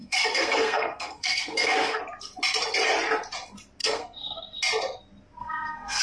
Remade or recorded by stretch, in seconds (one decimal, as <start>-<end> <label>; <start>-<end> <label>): 0.0-2.0 remade; 2.0-3.8 recorded; 3.8-4.6 remade; 4.6-5.4 recorded; 5.4-6.0 remade

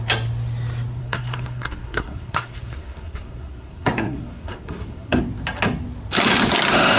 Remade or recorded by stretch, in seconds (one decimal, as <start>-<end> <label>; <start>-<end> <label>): 0.0-1.0 recorded; 1.0-5.2 remade; 5.2-7.0 recorded

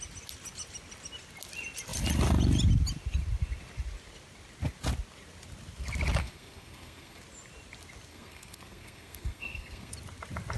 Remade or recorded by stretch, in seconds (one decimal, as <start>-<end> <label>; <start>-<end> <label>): 0.0-6.2 recorded; 6.2-7.2 remade; 7.2-8.1 recorded; 8.1-9.9 remade; 9.9-10.6 recorded

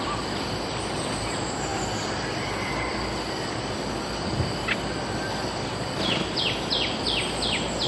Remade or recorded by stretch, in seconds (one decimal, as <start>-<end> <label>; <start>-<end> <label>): 0.0-7.9 recorded

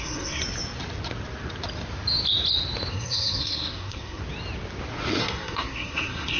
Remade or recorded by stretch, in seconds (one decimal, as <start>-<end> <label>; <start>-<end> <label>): 0.0-0.4 remade; 0.4-2.9 recorded; 2.9-4.2 remade; 4.2-5.2 recorded; 5.2-6.4 remade

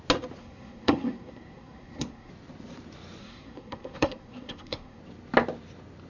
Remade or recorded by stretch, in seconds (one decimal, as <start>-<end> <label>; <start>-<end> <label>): 0.0-0.4 recorded; 0.4-2.3 remade; 2.3-3.2 recorded; 3.2-5.0 remade; 5.0-6.1 recorded

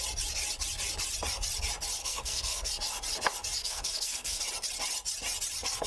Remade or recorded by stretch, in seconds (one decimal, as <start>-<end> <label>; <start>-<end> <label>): 0.0-2.0 recorded; 2.0-2.7 remade; 2.7-3.6 recorded; 3.6-4.4 remade; 4.4-5.9 recorded